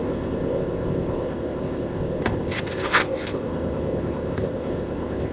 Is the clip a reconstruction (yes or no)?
yes